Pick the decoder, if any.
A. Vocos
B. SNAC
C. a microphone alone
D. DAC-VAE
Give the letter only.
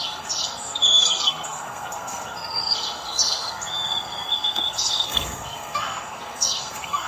B